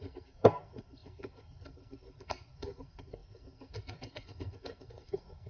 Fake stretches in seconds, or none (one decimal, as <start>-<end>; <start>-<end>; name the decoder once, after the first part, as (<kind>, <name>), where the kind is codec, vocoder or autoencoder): 0.0-5.5 (codec, SNAC)